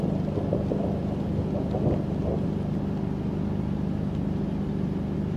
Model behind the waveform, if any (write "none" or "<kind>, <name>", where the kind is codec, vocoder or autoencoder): none